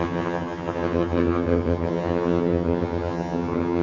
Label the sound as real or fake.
fake